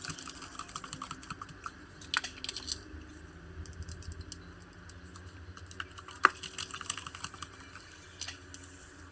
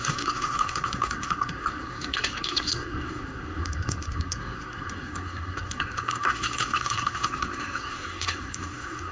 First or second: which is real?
first